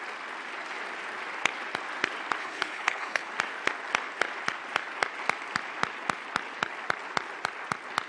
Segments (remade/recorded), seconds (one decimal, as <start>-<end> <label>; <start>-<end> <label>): 0.0-2.4 recorded; 2.4-3.3 remade; 3.3-8.1 recorded